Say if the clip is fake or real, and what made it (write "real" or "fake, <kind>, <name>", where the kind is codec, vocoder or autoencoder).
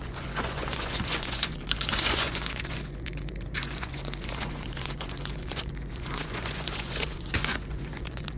fake, vocoder, Vocos